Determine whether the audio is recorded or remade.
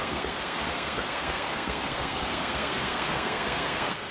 remade